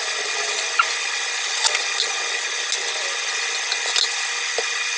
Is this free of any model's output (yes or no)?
yes